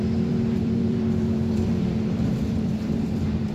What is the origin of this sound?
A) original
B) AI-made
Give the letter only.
B